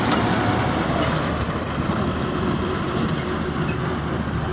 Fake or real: real